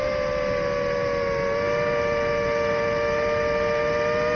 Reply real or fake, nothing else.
real